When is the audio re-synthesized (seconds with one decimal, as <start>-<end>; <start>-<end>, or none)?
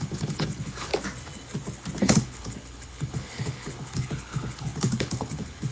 0.0-0.9; 2.0-5.7